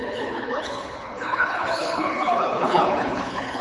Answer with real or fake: fake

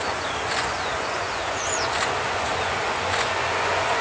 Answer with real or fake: fake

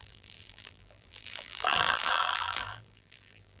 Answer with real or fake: fake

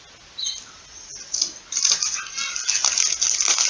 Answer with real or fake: real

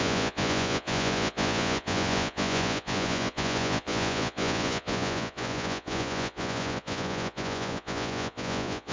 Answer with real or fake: fake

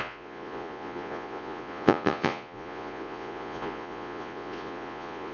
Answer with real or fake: fake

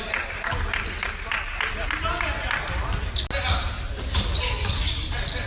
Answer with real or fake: real